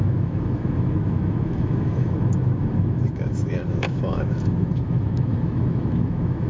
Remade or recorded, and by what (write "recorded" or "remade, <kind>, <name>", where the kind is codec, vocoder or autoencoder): remade, autoencoder, DAC-VAE